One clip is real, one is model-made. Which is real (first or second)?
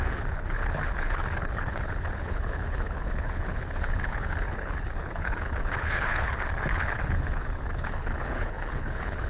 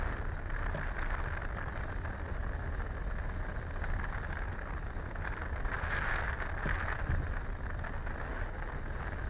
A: second